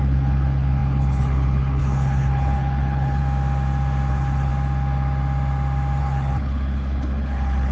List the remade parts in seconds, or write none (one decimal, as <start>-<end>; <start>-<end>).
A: 0.0-3.2; 4.1-4.5; 6.0-7.7